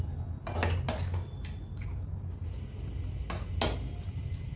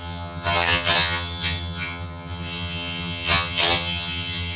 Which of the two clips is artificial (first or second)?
second